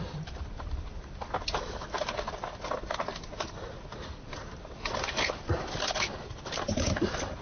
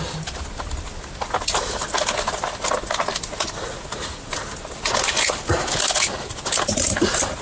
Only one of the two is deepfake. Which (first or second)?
first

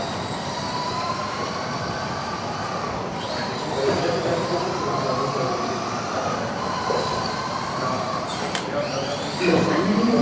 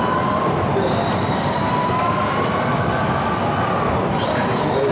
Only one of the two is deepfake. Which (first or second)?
first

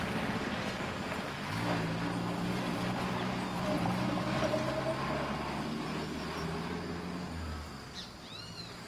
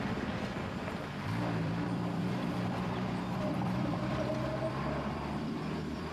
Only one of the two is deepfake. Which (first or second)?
second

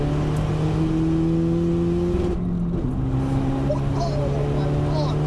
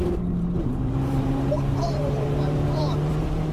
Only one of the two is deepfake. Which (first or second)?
second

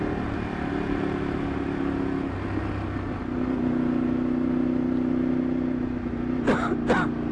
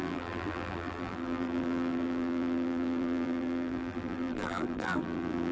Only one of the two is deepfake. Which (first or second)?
second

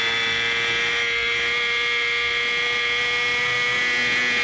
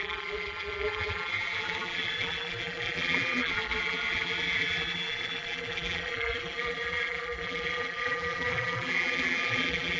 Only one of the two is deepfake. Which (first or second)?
second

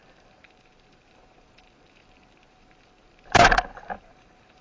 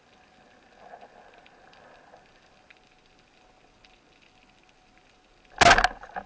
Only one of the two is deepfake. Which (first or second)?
first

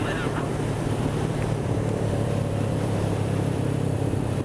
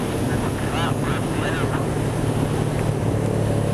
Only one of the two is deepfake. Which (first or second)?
first